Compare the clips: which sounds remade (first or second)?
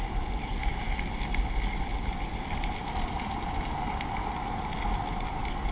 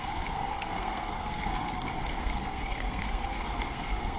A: second